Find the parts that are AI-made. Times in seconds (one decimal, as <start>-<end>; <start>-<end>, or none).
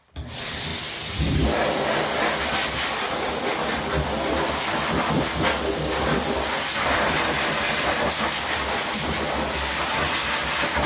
none